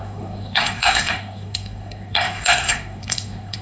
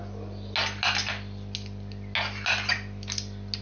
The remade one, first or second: first